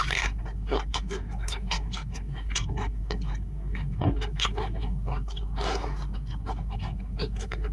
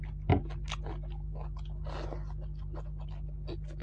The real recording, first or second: second